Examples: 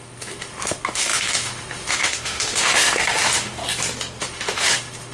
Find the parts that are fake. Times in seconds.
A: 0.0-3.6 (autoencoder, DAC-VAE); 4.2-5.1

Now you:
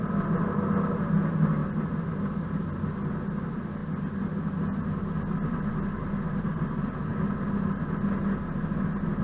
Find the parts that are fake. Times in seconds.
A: none

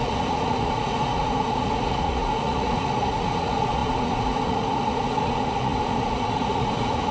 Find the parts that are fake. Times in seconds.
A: 0.0-7.1 (vocoder, Vocos)